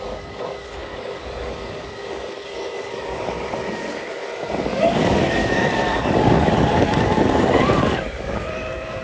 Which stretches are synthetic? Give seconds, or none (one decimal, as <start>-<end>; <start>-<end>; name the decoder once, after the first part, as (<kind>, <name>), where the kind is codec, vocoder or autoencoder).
0.0-9.0 (codec, DAC)